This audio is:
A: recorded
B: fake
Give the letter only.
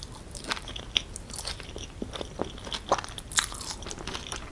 A